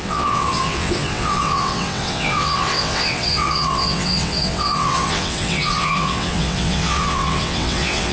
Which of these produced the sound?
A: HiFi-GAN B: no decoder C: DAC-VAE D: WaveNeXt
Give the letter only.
D